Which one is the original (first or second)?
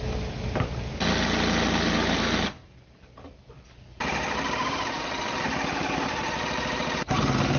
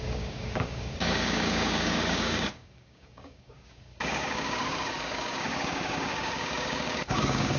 first